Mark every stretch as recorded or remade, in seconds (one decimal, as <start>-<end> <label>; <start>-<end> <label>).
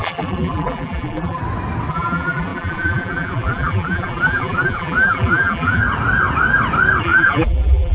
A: 0.0-1.4 remade; 1.4-1.9 recorded; 1.9-5.8 remade; 5.8-7.0 recorded; 7.0-7.9 remade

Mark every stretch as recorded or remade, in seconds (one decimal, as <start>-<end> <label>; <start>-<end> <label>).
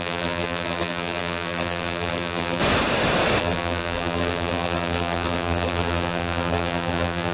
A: 0.0-2.6 remade; 2.6-3.4 recorded; 3.4-7.3 remade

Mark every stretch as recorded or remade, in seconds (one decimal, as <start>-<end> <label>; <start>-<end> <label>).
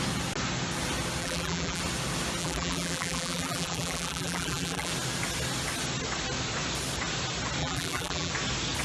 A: 0.0-1.2 recorded; 1.2-1.8 remade; 1.8-2.4 recorded; 2.4-4.9 remade; 4.9-7.6 recorded; 7.6-8.3 remade; 8.3-8.8 recorded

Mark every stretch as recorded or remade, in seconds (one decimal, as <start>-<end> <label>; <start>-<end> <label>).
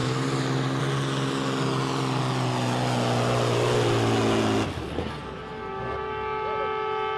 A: 0.0-0.8 remade; 0.8-7.2 recorded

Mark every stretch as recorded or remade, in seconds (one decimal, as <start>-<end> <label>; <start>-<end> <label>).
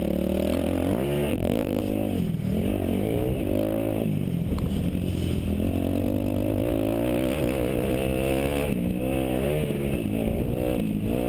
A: 0.0-1.3 recorded; 1.3-1.8 remade; 1.8-11.3 recorded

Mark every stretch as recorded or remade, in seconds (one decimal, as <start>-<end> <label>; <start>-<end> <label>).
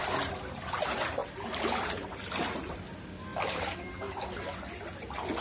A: 0.0-1.2 recorded; 1.2-2.1 remade; 2.1-5.4 recorded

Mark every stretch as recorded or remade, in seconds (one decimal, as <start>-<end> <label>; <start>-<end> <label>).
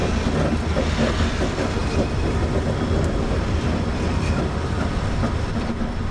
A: 0.0-1.1 recorded; 1.1-6.1 remade